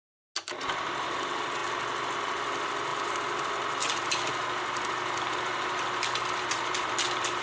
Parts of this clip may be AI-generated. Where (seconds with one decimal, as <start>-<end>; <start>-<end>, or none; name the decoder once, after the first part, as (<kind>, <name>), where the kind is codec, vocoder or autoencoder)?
none